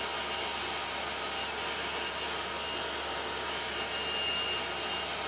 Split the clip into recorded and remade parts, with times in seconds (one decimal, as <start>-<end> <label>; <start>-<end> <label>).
0.0-5.3 recorded